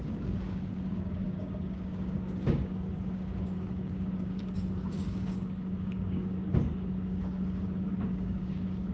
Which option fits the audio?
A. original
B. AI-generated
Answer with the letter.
B